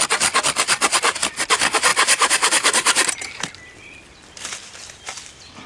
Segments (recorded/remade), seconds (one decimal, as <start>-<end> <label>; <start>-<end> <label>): 0.0-5.7 recorded